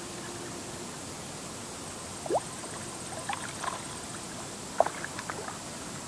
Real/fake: real